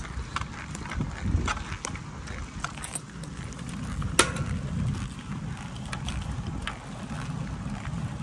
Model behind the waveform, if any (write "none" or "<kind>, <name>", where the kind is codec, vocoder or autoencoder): none